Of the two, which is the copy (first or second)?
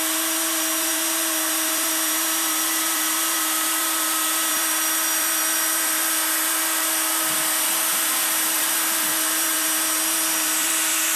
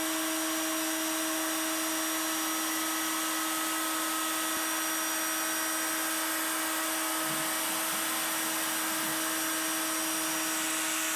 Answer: first